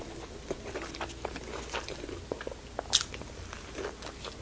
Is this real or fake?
real